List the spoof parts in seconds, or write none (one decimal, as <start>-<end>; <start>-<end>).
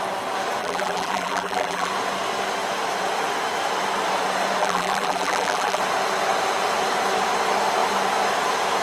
0.6-1.9; 4.6-5.8